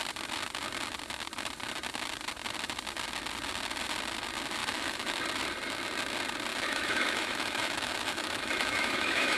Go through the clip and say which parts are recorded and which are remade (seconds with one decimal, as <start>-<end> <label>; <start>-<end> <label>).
0.0-4.6 recorded; 4.6-5.2 remade; 5.2-6.5 recorded; 6.5-9.4 remade